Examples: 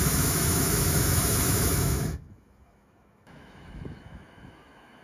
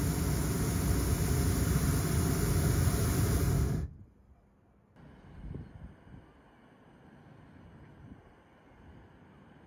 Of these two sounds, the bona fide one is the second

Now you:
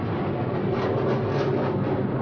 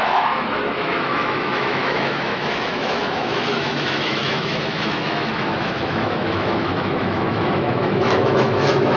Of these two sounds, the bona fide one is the first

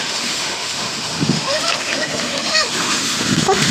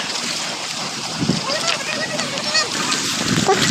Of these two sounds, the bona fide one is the second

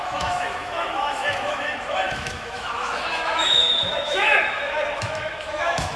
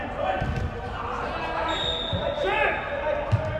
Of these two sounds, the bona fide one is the second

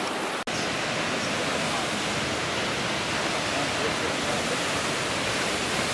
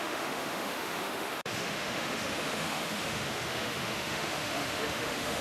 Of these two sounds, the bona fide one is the first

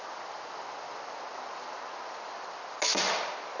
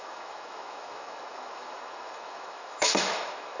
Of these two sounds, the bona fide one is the first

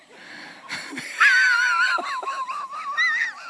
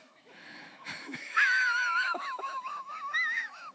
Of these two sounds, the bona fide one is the first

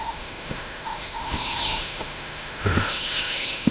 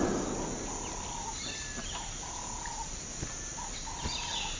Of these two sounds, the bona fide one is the second